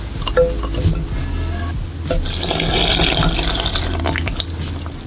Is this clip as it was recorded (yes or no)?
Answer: yes